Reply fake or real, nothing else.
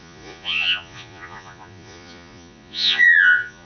fake